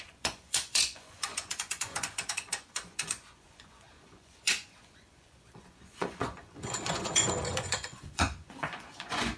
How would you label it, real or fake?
fake